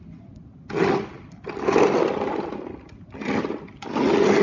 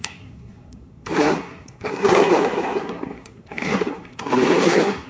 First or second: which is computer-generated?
second